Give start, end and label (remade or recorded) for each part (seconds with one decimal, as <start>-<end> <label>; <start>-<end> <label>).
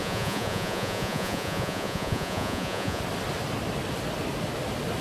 0.0-3.0 remade; 3.0-5.0 recorded